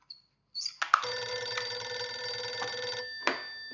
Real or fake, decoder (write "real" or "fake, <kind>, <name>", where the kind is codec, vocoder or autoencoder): real